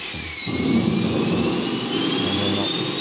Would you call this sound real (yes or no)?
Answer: yes